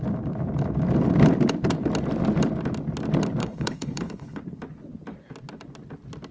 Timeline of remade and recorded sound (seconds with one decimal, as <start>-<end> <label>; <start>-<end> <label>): 0.0-3.4 recorded; 3.4-4.4 remade; 4.4-6.3 recorded